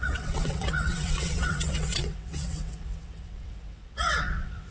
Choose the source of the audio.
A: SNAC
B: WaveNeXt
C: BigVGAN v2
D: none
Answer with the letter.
B